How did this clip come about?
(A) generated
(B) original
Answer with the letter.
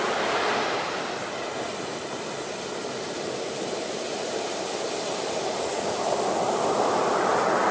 B